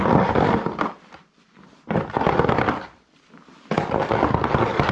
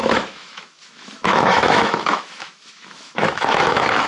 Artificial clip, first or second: second